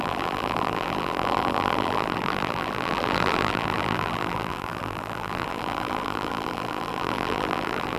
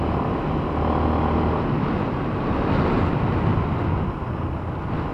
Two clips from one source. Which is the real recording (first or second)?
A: second